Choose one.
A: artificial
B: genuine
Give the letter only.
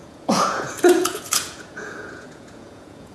A